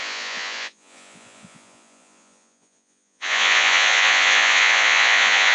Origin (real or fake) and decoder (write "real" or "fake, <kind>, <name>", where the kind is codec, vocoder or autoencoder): fake, vocoder, Vocos